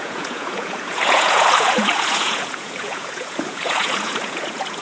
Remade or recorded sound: remade